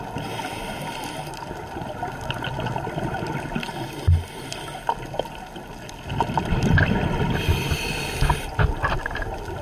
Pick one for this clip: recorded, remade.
recorded